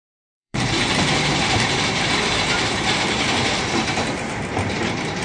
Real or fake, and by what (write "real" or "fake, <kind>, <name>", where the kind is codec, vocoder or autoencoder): fake, vocoder, BigVGAN v2